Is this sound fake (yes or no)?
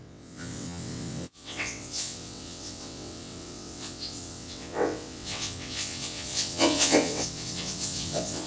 yes